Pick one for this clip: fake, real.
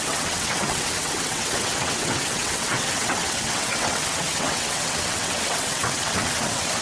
fake